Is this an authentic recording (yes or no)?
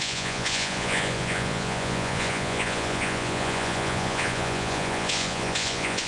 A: no